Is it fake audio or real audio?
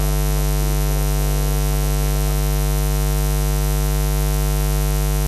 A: real